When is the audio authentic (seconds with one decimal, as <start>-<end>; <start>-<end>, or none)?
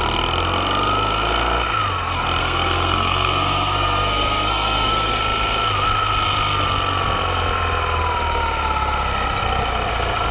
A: 0.0-2.4; 5.2-10.3